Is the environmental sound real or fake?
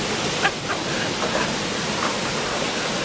real